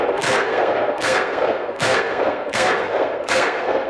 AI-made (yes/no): yes